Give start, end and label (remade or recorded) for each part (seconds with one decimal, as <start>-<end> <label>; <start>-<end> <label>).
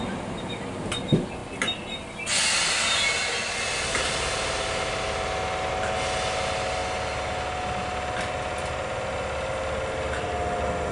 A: 0.0-10.9 recorded